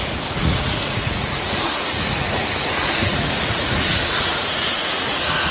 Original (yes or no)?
no